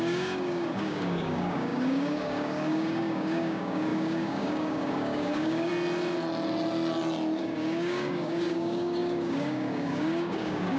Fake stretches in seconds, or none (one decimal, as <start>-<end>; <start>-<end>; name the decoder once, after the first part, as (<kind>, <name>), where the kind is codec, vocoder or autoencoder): 0.0-5.7 (codec, DAC); 7.4-10.8